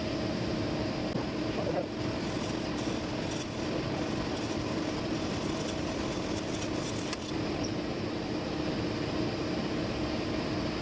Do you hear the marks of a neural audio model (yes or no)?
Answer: no